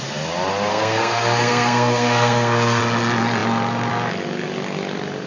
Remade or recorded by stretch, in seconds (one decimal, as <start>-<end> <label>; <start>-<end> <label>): 0.0-0.7 recorded; 0.7-2.8 remade; 2.8-5.3 recorded